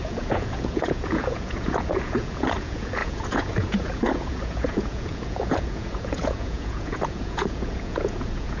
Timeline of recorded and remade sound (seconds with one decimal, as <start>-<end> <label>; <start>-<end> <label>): 0.0-8.6 remade